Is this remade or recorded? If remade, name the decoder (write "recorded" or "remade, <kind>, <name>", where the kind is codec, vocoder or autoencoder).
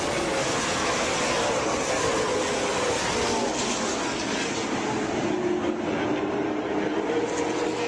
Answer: recorded